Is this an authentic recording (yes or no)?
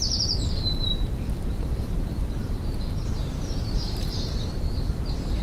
no